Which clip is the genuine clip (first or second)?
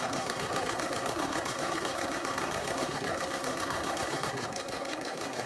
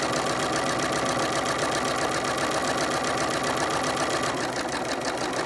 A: second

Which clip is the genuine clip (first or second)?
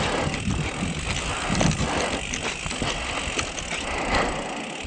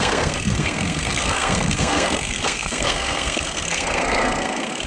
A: first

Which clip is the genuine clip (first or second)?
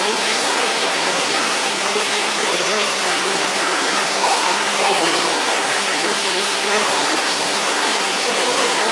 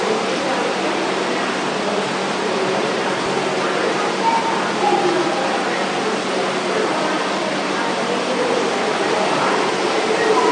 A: second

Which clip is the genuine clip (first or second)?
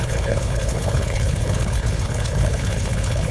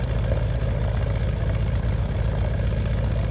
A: second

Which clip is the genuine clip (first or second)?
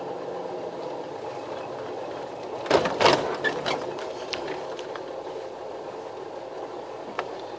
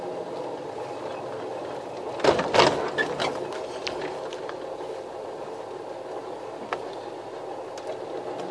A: second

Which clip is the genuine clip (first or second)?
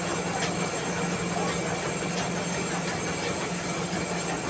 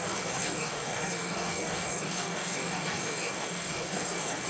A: first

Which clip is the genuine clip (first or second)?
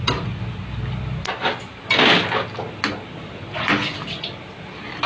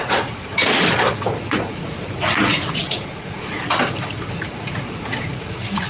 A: first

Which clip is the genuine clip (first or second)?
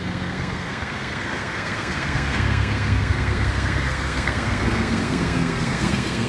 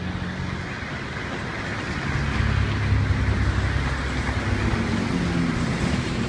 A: second